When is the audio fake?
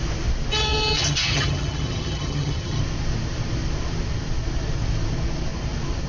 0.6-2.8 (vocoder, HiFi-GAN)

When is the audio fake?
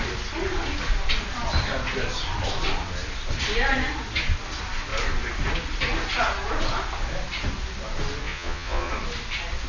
8.2-8.9 (vocoder, Vocos)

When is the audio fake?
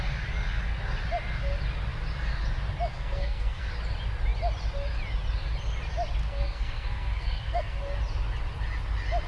2.9-3.7 (codec, SNAC); 6.2-7.8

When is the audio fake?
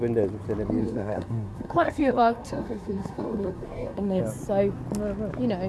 0.8-4.2 (codec, SNAC)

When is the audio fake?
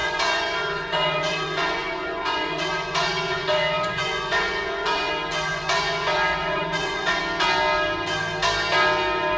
0.0-5.1 (vocoder, Vocos); 5.5-7.2